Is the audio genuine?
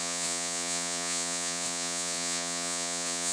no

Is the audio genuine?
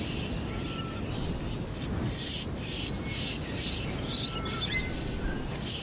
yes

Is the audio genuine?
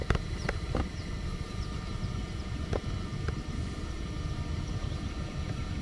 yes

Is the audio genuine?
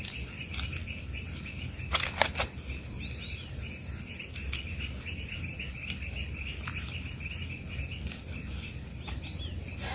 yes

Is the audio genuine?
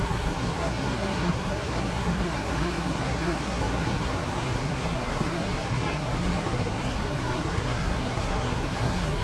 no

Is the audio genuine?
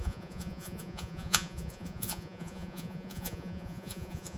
no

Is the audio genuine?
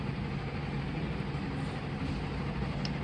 yes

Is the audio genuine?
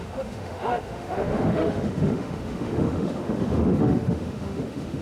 no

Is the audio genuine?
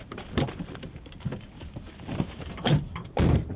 no